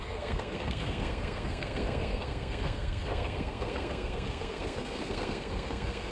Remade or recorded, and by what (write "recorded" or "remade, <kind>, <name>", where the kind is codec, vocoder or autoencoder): remade, codec, SNAC